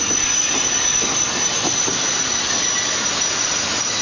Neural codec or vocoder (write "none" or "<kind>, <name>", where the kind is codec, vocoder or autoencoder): none